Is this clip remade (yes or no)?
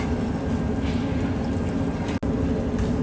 no